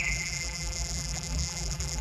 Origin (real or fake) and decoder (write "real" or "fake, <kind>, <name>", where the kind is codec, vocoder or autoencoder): fake, vocoder, BigVGAN v2